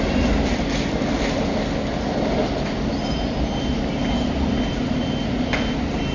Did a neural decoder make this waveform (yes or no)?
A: no